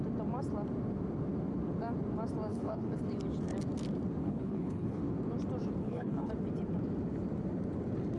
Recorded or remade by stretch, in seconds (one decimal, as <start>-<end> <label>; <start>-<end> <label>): 0.0-2.5 recorded; 2.5-3.0 remade; 3.0-4.2 recorded; 4.2-5.0 remade; 5.0-5.8 recorded; 5.8-6.3 remade; 6.3-8.2 recorded

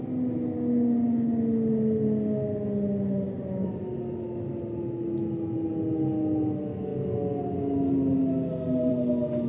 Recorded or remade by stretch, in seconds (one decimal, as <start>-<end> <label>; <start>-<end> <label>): 0.0-9.5 recorded

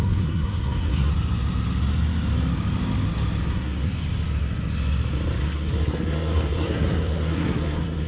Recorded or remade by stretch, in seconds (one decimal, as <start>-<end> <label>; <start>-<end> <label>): 0.0-1.1 remade; 1.1-3.5 recorded; 3.5-3.9 remade; 3.9-5.4 recorded; 5.4-8.1 remade